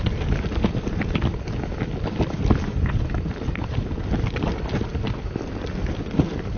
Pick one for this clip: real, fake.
real